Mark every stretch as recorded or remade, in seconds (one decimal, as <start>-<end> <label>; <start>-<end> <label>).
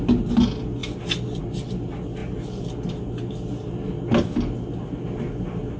0.0-5.8 recorded